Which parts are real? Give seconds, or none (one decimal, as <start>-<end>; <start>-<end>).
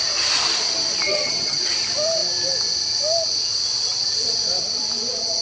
0.0-1.1; 1.6-5.4